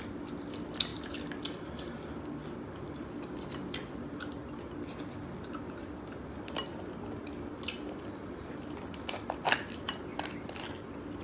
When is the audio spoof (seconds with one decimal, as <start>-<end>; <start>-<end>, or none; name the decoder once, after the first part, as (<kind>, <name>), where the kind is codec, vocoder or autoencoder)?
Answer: none